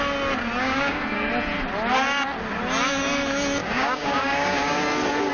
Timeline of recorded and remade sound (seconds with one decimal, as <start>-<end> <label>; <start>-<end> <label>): 0.0-0.6 recorded; 0.6-1.3 remade; 1.3-3.6 recorded; 3.6-4.8 remade; 4.8-5.3 recorded